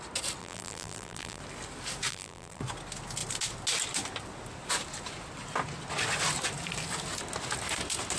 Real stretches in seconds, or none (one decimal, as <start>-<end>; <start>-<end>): 0.0-0.4; 1.4-2.1; 2.6-8.2